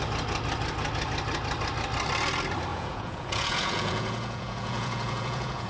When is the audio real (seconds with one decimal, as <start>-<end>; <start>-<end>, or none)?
0.0-2.7